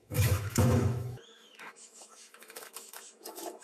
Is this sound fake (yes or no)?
yes